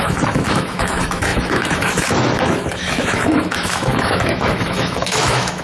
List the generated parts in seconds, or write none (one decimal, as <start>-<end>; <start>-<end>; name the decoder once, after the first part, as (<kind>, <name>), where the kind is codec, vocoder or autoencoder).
0.0-5.6 (autoencoder, DAC-VAE)